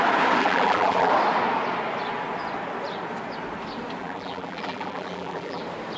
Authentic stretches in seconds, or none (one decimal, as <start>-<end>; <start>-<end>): 0.0-0.4; 1.1-4.0; 5.6-6.0